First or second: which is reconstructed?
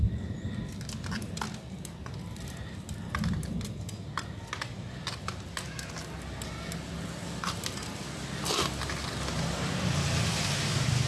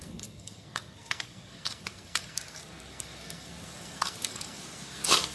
second